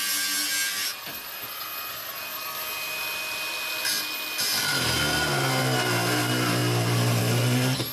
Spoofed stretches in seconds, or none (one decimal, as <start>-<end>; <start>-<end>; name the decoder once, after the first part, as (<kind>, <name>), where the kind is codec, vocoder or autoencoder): none

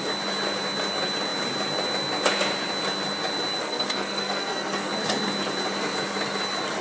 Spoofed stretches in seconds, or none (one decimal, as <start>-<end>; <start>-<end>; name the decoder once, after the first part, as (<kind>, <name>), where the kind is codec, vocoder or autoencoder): 3.6-4.9 (codec, SNAC)

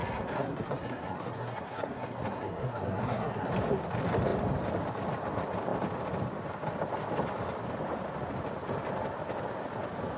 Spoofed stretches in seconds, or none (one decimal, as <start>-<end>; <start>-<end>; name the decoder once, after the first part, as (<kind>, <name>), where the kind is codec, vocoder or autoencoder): 0.0-3.5 (codec, SNAC)

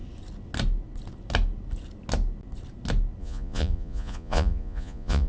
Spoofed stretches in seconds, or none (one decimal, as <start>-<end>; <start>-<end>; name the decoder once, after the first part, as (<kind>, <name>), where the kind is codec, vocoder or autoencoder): 3.2-5.3 (vocoder, Vocos)

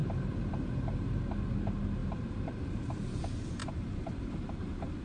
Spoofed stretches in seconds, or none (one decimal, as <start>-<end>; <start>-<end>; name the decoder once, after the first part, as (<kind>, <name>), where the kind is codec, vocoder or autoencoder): 0.0-1.2 (vocoder, BigVGAN v2); 2.0-3.1; 3.6-4.5